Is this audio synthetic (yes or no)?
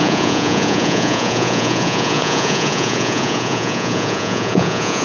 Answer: yes